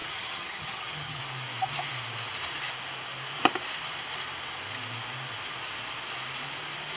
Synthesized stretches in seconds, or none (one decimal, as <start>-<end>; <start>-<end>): 0.0-1.2